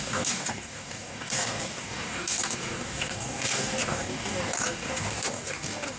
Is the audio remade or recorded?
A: remade